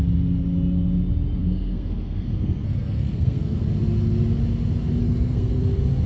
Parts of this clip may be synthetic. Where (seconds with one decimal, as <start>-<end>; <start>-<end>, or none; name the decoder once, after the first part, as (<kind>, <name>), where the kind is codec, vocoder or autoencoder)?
1.4-3.6 (codec, SNAC); 5.0-5.6